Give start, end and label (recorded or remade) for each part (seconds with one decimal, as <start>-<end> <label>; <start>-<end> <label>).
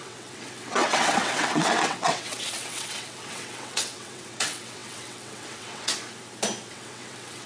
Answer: 0.0-5.9 remade; 5.9-6.7 recorded; 6.7-7.5 remade